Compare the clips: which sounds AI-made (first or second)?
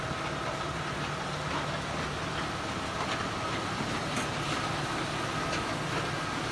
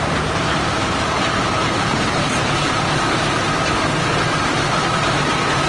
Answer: second